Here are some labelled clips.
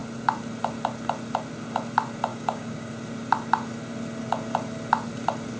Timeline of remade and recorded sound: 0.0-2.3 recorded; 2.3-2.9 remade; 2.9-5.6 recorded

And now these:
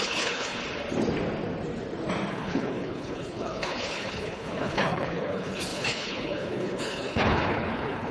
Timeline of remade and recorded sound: 0.0-0.6 remade; 0.6-2.3 recorded; 2.3-8.1 remade

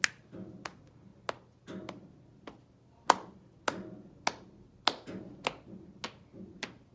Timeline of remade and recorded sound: 0.0-6.9 recorded

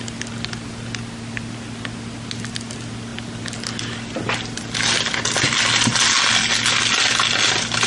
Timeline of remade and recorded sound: 0.0-7.9 recorded